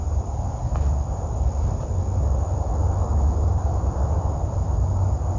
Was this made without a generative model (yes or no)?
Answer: yes